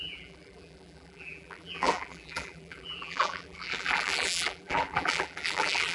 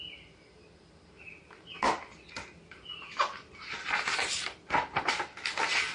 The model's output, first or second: first